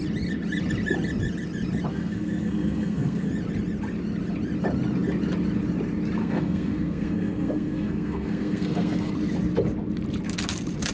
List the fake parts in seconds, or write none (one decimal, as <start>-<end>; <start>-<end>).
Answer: 1.9-3.3; 6.2-9.1